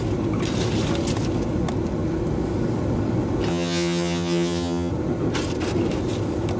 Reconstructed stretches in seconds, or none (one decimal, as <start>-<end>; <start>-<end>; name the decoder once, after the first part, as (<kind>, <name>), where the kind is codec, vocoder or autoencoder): 3.5-4.9 (vocoder, HiFi-GAN)